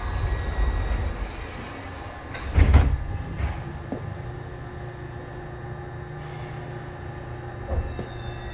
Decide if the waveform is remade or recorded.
recorded